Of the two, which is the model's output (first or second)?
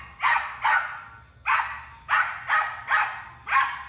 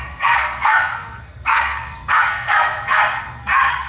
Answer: second